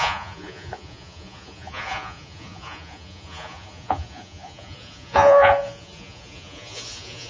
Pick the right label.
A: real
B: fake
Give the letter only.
B